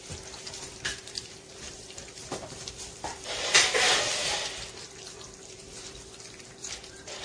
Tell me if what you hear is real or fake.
fake